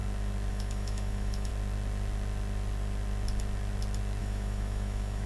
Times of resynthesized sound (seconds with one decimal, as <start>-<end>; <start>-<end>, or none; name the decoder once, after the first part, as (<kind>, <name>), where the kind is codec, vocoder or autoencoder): 0.5-1.5 (autoencoder, DAC-VAE); 4.2-5.3